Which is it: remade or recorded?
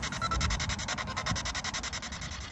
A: recorded